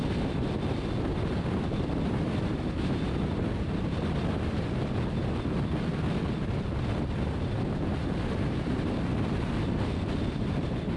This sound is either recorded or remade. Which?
recorded